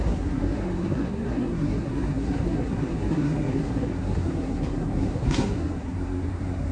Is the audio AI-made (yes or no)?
yes